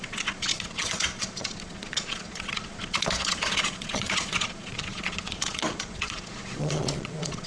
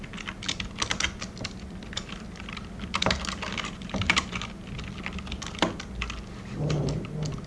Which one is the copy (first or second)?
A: first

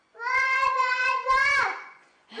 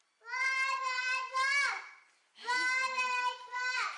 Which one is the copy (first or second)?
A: first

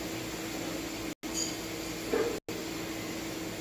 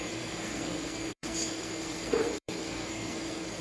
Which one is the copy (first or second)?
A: second